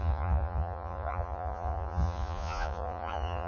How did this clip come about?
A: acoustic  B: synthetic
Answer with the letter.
B